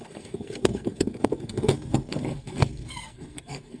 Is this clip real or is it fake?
fake